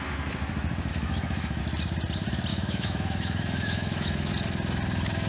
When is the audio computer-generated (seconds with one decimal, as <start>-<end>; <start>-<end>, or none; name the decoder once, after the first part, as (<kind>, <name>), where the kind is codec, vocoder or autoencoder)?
0.9-1.6 (autoencoder, DAC-VAE); 2.5-4.3